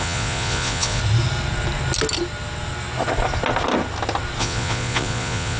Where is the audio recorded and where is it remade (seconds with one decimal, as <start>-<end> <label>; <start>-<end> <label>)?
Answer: 0.0-1.0 remade; 1.0-4.4 recorded; 4.4-5.6 remade